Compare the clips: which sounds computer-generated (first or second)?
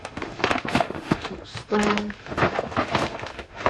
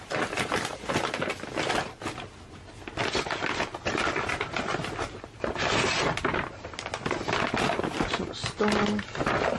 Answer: first